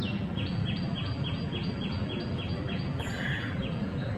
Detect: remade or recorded remade